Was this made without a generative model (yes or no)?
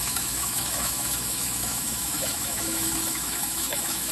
no